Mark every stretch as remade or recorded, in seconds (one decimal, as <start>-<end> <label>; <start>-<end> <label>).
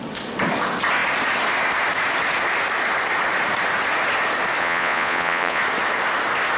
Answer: 0.0-4.6 recorded; 4.6-5.6 remade; 5.6-6.6 recorded